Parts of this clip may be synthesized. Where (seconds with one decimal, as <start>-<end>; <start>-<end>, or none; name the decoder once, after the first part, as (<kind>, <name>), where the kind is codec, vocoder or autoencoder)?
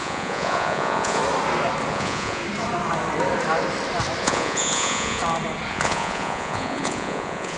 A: 0.0-1.2 (vocoder, Vocos); 1.9-2.4; 4.2-5.2; 5.7-7.6